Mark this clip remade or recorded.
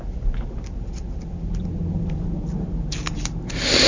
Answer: recorded